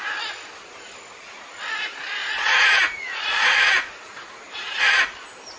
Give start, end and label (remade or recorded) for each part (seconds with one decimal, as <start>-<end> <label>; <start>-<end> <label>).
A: 0.0-2.2 recorded; 2.2-5.0 remade; 5.0-5.6 recorded